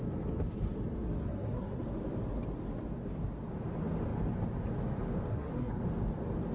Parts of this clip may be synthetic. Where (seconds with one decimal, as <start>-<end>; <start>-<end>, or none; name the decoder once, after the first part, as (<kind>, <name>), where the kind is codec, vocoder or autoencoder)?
1.3-1.8 (codec, SNAC); 5.3-5.8